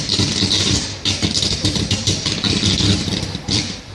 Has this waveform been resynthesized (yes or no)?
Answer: yes